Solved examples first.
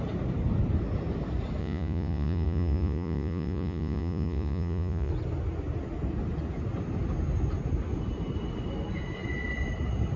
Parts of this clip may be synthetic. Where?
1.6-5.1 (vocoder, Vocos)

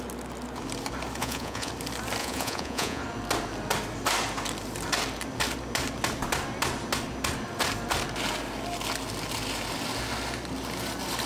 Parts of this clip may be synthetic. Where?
1.2-1.7 (vocoder, Vocos); 2.2-3.0

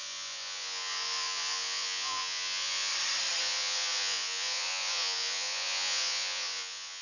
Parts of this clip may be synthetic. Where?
0.0-2.9 (vocoder, Vocos); 3.4-7.0